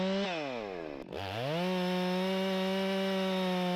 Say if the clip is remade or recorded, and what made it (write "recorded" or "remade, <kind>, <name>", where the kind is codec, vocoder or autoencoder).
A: recorded